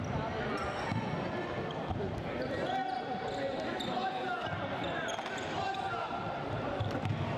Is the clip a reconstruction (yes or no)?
no